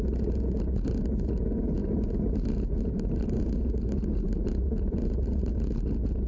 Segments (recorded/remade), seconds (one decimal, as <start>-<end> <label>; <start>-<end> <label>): 0.0-1.8 recorded; 1.8-5.5 remade; 5.5-6.3 recorded